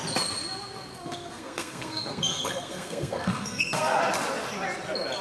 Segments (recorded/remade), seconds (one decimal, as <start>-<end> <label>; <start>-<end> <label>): 0.0-0.9 recorded; 0.9-4.0 remade; 4.0-5.2 recorded